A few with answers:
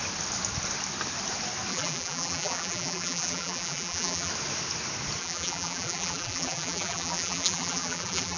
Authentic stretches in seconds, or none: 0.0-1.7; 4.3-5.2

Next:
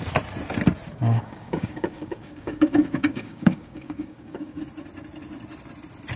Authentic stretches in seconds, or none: 0.0-0.9; 4.6-6.2

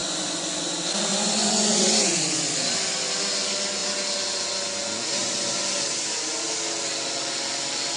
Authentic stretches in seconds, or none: 0.6-1.1; 2.5-8.0